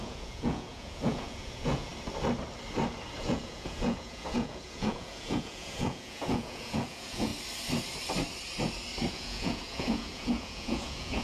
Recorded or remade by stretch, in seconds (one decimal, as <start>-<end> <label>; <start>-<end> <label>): 0.0-1.9 remade; 1.9-3.2 recorded; 3.2-7.3 remade; 7.3-9.1 recorded; 9.1-11.2 remade